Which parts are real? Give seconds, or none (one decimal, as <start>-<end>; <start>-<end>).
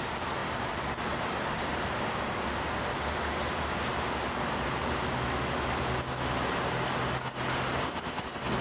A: 0.0-8.6